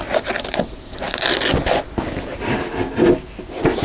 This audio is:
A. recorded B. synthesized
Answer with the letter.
A